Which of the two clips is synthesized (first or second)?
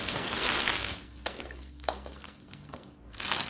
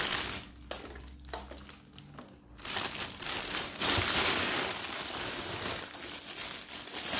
first